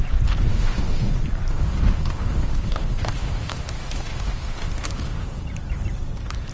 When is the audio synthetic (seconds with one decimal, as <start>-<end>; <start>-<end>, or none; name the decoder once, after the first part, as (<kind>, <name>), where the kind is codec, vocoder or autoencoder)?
0.5-1.1 (autoencoder, DAC-VAE); 1.5-5.4